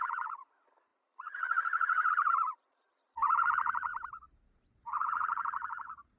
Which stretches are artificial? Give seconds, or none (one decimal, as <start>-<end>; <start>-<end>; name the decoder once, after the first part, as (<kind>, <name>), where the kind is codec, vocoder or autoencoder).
0.0-3.9 (vocoder, Vocos); 4.7-6.2